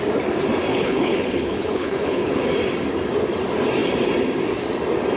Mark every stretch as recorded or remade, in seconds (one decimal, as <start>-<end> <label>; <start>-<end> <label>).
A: 0.0-0.7 recorded; 0.7-2.4 remade; 2.4-5.2 recorded

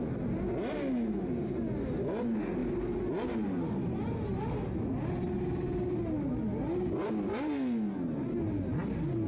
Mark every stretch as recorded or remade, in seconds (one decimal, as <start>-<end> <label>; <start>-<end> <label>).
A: 0.0-9.3 recorded

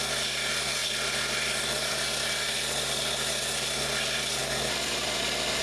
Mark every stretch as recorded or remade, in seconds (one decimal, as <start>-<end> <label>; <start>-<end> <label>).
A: 0.0-4.4 recorded; 4.4-5.6 remade

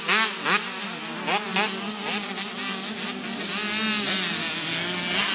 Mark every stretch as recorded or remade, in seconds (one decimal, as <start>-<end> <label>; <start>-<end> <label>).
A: 0.0-5.3 recorded

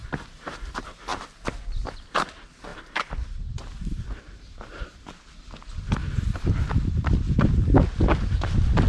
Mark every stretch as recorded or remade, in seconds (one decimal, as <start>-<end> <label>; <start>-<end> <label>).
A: 0.0-0.7 remade; 0.7-2.7 recorded; 2.7-5.4 remade; 5.4-6.0 recorded; 6.0-6.7 remade; 6.7-8.9 recorded

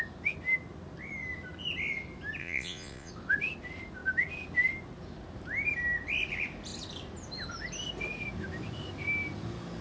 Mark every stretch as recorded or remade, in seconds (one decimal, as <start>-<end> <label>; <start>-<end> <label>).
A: 0.0-2.4 recorded; 2.4-3.1 remade; 3.1-9.8 recorded

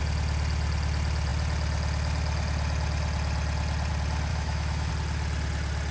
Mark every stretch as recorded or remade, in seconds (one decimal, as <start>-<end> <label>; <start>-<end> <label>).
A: 0.0-4.3 recorded; 4.3-4.9 remade; 4.9-5.9 recorded

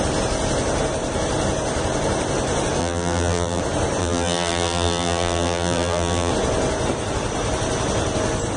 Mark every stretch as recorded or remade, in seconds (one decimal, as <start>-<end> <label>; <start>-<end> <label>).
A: 0.0-2.8 recorded; 2.8-3.6 remade; 3.6-4.0 recorded; 4.0-6.3 remade; 6.3-8.6 recorded